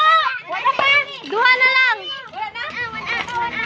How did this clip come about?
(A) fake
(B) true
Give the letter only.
B